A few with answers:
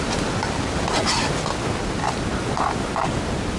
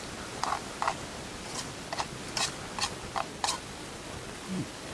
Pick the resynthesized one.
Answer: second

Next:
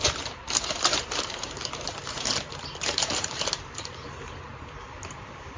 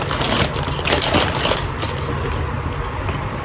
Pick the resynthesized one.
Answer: first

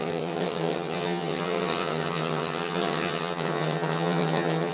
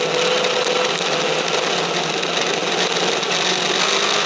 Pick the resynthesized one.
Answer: first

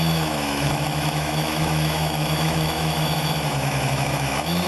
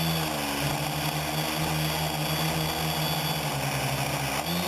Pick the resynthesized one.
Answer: first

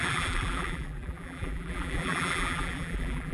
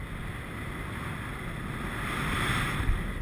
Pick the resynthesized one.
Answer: first